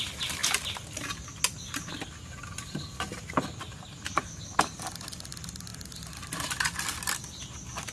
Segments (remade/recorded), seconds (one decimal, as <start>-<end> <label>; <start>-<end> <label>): 0.0-7.9 recorded